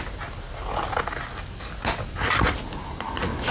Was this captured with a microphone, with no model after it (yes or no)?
yes